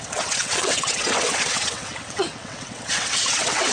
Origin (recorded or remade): remade